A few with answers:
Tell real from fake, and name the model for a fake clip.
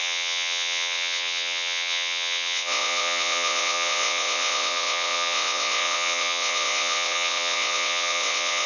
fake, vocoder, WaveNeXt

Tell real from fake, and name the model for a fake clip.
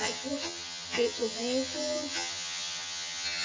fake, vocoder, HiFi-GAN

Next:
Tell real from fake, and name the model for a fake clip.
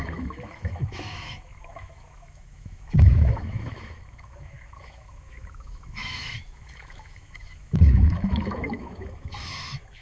fake, autoencoder, DAC-VAE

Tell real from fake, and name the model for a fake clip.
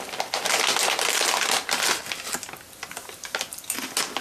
real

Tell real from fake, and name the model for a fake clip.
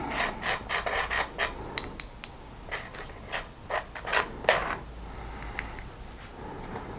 real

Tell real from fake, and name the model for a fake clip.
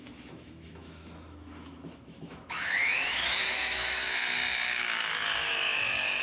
fake, autoencoder, DAC-VAE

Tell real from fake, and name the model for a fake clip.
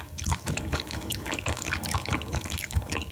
fake, codec, DAC